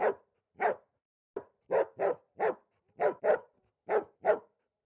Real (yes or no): yes